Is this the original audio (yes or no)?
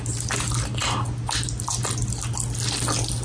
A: yes